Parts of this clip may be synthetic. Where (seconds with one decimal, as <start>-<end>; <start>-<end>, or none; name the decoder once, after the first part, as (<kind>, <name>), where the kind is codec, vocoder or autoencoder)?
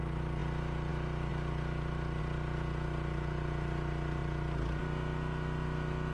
none